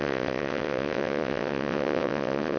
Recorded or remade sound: remade